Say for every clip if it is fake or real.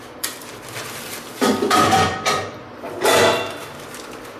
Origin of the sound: fake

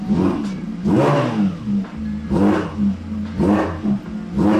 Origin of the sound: real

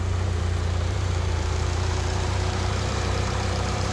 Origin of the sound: fake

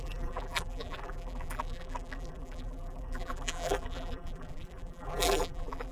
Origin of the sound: fake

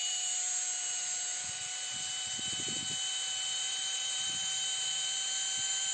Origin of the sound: fake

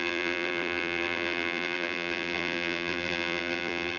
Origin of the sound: fake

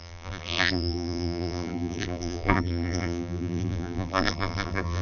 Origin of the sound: fake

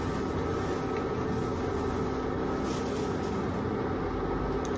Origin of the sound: real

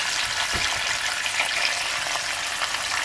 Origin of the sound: real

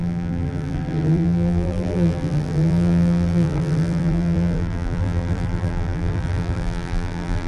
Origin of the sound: fake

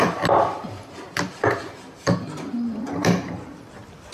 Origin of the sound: fake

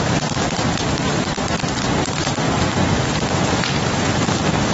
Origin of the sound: fake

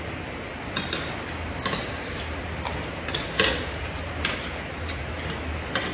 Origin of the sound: real